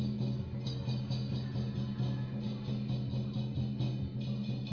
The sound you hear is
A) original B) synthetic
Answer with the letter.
A